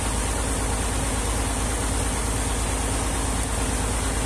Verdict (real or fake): real